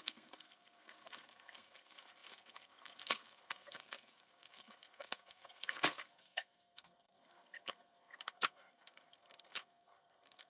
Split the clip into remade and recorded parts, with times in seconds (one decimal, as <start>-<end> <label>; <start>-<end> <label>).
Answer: 0.0-10.5 remade

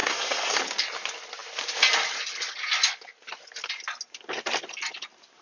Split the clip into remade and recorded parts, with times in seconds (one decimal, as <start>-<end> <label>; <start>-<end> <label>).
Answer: 0.0-0.6 remade; 0.6-5.4 recorded